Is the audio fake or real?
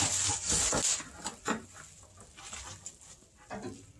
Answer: real